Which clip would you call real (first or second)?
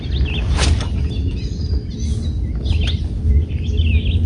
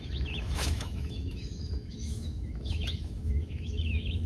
first